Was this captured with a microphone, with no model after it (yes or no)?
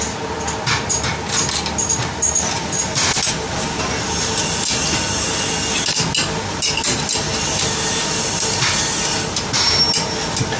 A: yes